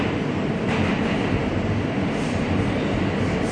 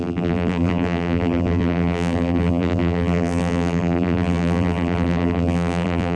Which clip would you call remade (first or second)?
second